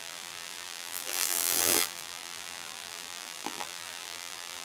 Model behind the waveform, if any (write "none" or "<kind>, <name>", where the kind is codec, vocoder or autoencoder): vocoder, BigVGAN v2